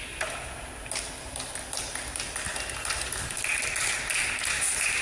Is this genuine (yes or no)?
yes